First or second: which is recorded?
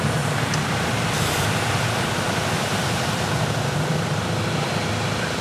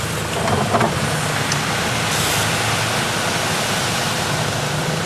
second